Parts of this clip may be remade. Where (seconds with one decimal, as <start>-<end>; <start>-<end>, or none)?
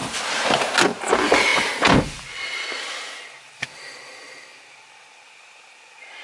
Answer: none